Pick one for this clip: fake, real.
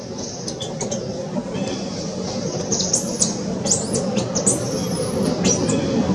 real